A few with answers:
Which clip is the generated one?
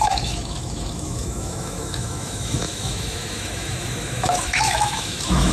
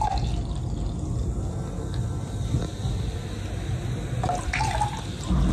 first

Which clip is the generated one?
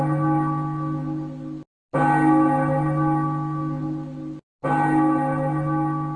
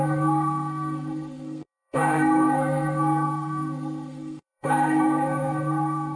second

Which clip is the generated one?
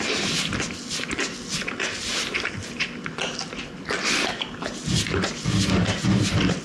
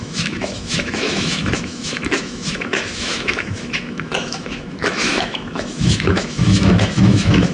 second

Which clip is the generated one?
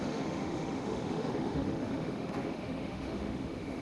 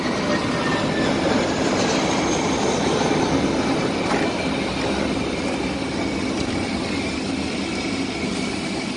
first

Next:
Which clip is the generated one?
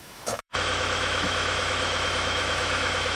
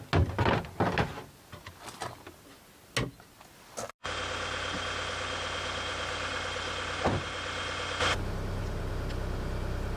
first